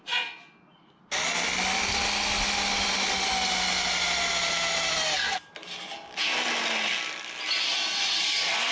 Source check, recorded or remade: recorded